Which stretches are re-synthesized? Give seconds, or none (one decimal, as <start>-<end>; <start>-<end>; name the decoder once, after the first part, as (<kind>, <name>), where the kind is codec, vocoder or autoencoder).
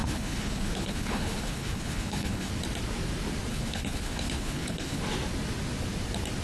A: 0.0-2.5 (codec, HILCodec); 3.5-5.0